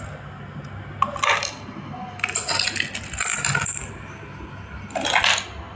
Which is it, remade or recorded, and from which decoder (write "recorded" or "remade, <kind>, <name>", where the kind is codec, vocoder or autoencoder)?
recorded